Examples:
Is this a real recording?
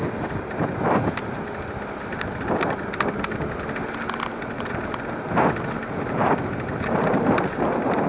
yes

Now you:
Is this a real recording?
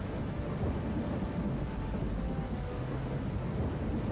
yes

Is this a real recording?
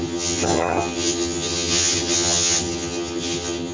no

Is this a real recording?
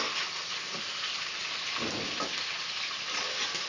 yes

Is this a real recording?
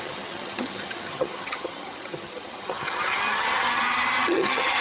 no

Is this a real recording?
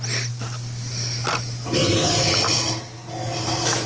yes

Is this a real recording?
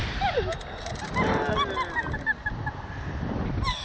yes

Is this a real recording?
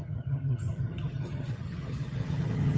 no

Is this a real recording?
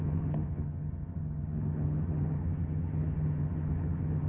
no